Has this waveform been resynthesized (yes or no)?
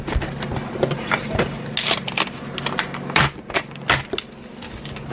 no